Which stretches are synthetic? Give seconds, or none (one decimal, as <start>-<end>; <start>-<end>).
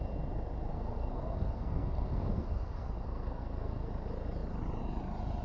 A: 0.7-3.9